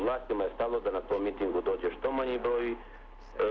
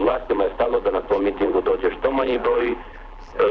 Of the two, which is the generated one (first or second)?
second